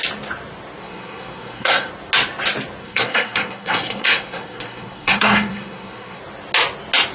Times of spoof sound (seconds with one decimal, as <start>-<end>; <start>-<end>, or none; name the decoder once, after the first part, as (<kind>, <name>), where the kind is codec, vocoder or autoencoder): 0.8-1.9 (codec, SNAC); 2.8-6.2